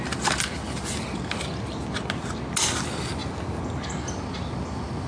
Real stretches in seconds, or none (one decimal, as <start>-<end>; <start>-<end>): 0.0-5.1